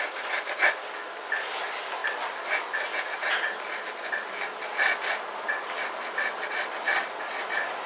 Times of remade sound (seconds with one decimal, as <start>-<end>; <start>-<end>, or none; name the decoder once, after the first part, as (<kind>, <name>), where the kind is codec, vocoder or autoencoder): none